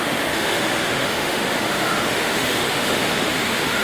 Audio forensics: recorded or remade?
remade